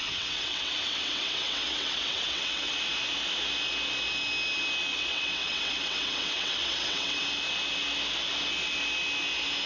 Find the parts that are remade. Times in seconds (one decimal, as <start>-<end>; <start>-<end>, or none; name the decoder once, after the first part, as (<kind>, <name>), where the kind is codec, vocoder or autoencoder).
0.0-2.7 (vocoder, WaveNeXt); 4.9-7.2